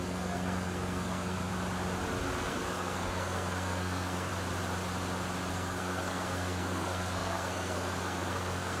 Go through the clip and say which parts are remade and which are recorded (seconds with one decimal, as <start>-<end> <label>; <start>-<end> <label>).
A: 0.0-1.5 remade; 1.5-2.4 recorded; 2.4-4.3 remade; 4.3-5.5 recorded; 5.5-8.8 remade